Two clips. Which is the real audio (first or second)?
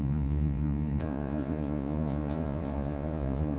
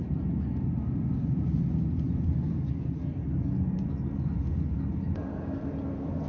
second